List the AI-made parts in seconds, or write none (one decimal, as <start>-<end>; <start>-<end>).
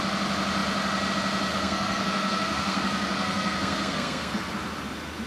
1.5-4.5